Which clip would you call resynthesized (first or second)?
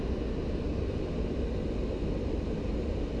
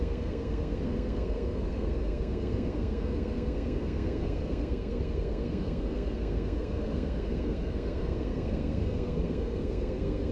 second